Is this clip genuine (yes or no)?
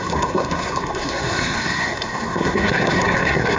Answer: no